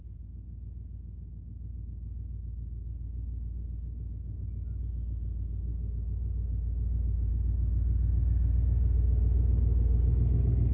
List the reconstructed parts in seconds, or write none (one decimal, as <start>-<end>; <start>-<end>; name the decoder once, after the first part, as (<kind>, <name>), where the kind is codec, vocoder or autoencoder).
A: 5.7-7.3 (autoencoder, DAC-VAE)